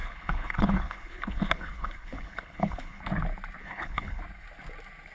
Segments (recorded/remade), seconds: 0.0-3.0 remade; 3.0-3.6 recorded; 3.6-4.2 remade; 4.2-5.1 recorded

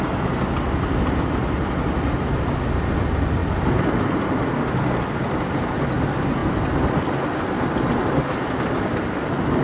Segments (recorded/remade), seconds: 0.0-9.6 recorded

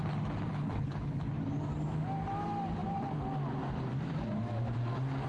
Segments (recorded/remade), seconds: 0.0-0.5 recorded; 0.5-1.2 remade; 1.2-5.3 recorded